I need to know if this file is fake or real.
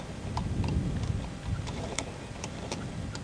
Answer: real